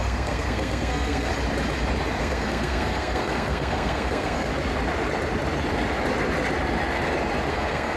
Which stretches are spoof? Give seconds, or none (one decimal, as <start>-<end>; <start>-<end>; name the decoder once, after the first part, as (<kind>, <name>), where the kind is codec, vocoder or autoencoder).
0.0-1.3 (codec, SNAC); 2.2-4.5; 7.5-8.0